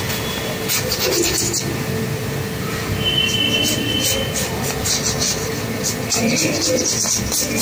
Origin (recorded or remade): recorded